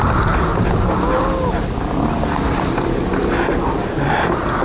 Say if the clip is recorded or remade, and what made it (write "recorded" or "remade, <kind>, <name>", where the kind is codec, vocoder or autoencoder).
recorded